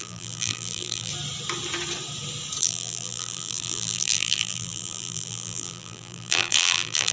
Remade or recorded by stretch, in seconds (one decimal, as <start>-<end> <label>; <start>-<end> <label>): 0.0-1.1 remade; 1.1-2.6 recorded; 2.6-7.1 remade